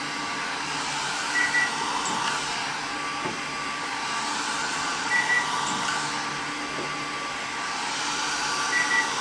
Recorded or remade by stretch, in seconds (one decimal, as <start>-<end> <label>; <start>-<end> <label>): 0.0-4.6 recorded; 4.6-5.1 remade; 5.1-9.2 recorded